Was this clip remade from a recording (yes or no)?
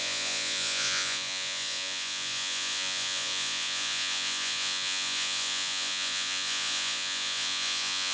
yes